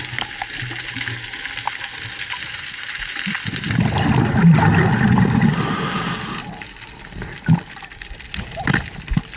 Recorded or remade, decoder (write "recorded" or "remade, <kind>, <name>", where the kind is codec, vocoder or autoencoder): recorded